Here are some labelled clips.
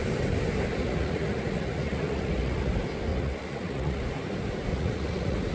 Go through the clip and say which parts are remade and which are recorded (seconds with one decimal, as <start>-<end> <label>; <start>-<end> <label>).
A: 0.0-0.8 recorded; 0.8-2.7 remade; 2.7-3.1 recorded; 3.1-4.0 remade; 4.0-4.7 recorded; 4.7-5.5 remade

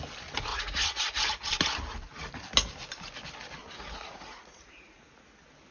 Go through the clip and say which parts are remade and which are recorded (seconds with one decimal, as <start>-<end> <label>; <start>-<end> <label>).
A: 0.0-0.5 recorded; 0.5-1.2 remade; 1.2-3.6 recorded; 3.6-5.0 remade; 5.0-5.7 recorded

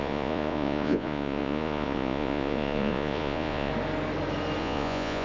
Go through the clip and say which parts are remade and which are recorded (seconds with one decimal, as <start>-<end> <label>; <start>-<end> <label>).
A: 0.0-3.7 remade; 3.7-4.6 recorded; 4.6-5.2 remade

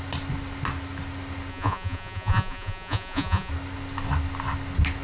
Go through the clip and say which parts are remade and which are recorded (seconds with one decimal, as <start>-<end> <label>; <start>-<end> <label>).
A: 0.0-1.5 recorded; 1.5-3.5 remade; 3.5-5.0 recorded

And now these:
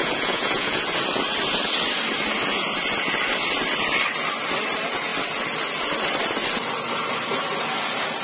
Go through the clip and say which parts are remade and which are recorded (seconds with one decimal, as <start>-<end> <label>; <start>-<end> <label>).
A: 0.0-0.8 remade; 0.8-8.2 recorded

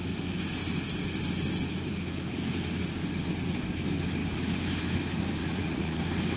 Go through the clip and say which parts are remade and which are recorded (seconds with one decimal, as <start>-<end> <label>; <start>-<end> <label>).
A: 0.0-5.4 recorded; 5.4-6.0 remade; 6.0-6.4 recorded

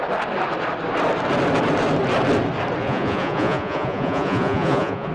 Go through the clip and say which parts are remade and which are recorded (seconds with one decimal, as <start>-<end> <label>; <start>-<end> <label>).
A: 0.0-2.8 recorded; 2.8-5.1 remade